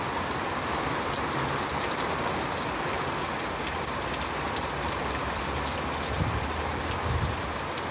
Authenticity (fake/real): real